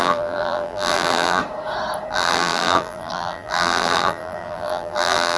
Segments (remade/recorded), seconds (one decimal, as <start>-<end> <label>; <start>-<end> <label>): 0.0-1.4 remade; 1.4-2.1 recorded; 2.1-5.4 remade